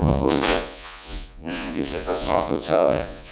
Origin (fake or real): fake